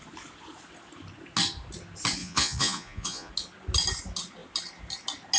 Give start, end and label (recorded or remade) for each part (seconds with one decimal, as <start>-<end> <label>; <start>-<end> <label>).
0.0-2.2 recorded; 2.2-3.3 remade; 3.3-5.4 recorded